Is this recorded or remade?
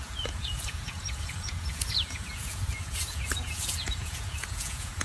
remade